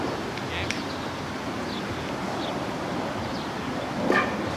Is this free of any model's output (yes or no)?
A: yes